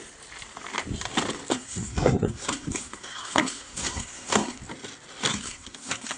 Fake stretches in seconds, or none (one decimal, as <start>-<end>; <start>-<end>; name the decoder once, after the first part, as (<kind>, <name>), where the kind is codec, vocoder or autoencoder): 1.5-4.6 (codec, SNAC); 5.3-6.2